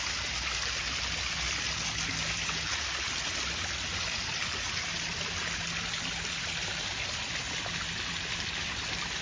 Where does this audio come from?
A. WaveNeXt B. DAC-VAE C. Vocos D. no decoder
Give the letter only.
D